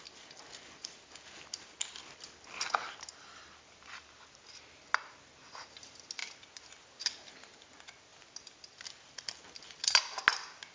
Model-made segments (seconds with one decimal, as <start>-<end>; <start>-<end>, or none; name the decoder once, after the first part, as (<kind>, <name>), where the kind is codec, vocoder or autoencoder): none